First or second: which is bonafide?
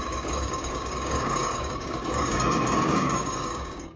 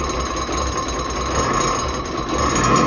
second